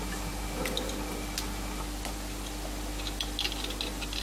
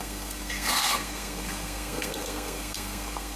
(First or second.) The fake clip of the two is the second